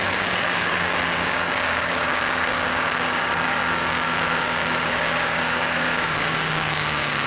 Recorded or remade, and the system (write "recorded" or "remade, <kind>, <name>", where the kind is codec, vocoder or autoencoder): remade, codec, DAC